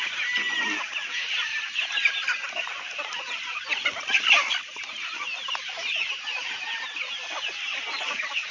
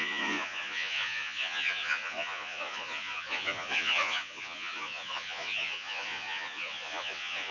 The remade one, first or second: second